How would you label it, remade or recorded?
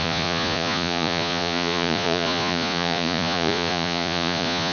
remade